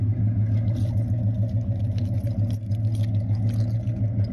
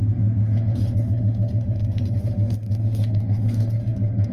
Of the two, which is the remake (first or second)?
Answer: second